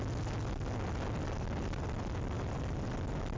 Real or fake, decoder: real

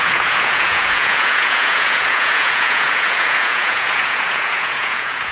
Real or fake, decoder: fake, vocoder, Vocos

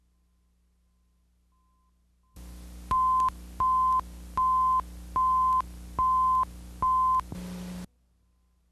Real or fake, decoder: real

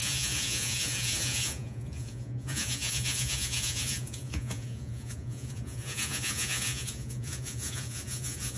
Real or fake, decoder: fake, vocoder, Vocos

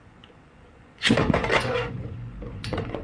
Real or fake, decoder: fake, vocoder, Vocos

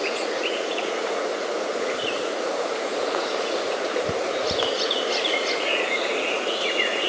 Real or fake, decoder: fake, vocoder, Vocos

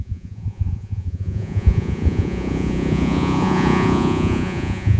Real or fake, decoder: fake, vocoder, Vocos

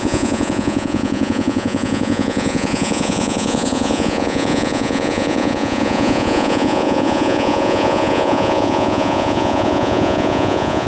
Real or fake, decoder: fake, vocoder, Vocos